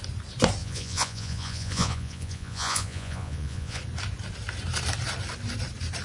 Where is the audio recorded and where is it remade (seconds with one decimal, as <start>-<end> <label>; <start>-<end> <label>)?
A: 0.0-0.6 recorded; 0.6-3.8 remade; 3.8-6.0 recorded